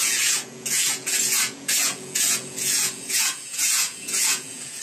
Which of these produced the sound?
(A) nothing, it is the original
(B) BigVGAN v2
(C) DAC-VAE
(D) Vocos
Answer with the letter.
D